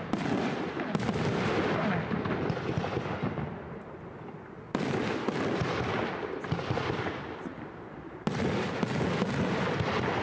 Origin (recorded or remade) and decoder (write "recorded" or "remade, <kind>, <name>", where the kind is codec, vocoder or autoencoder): recorded